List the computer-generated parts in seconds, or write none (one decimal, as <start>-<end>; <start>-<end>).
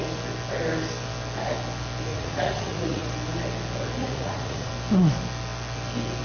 2.1-3.1; 4.0-4.7